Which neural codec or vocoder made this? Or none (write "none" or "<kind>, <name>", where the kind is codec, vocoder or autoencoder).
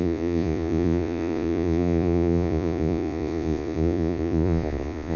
vocoder, Vocos